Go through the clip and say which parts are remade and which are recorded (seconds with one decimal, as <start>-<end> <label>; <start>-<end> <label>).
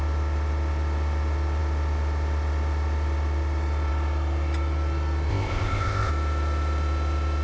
0.0-5.3 recorded; 5.3-6.1 remade; 6.1-7.4 recorded